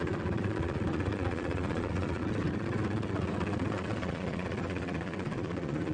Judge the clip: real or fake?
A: fake